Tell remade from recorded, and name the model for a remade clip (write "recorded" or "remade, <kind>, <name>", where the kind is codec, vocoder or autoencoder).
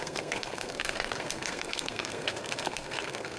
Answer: remade, codec, SNAC